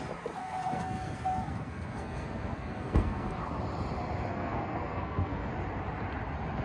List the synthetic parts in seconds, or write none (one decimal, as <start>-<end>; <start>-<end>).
0.4-3.4; 4.3-5.5

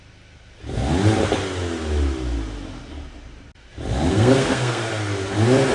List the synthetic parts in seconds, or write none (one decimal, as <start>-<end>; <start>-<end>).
4.1-4.9

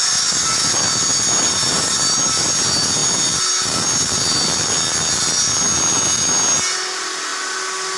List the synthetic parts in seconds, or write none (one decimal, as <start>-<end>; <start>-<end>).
none